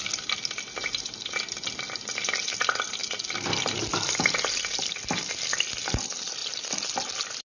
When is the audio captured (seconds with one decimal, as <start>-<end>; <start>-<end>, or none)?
0.0-7.5